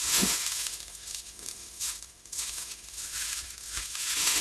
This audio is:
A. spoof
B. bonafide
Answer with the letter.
A